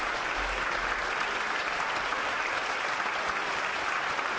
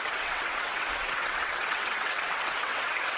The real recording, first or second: first